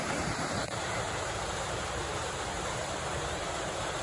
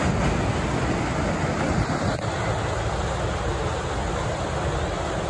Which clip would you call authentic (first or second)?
second